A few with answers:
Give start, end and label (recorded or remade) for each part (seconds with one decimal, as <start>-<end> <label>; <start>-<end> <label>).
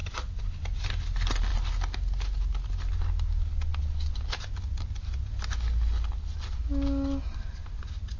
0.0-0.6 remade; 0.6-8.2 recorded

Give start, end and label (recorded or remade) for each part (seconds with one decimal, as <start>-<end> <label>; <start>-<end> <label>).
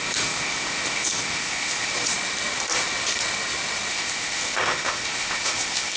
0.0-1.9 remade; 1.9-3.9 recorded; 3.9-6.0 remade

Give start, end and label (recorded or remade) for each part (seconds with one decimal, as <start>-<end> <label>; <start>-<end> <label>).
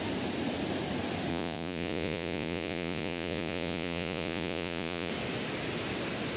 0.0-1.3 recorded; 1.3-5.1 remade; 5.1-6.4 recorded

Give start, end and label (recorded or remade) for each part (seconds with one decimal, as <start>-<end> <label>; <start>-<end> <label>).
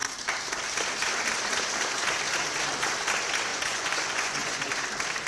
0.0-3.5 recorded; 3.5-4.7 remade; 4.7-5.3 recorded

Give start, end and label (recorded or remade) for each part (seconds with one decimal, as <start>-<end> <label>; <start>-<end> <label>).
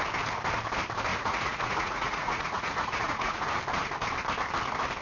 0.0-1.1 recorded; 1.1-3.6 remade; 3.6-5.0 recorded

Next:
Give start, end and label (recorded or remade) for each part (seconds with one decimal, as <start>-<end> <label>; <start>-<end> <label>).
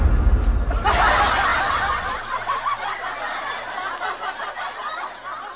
0.0-5.6 recorded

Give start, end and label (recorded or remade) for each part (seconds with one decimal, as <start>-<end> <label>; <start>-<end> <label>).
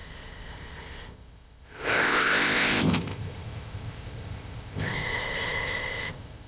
0.0-6.5 remade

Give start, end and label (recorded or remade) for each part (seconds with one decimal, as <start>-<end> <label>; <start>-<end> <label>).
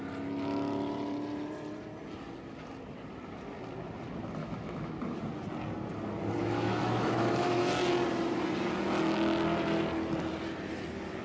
0.0-4.4 recorded; 4.4-4.9 remade; 4.9-6.4 recorded; 6.4-7.7 remade; 7.7-11.2 recorded